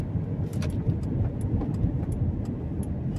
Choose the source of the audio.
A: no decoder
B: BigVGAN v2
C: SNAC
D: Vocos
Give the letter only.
A